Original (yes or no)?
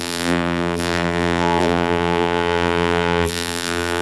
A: no